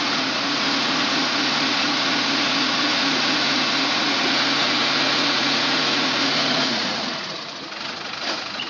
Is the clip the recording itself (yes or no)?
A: no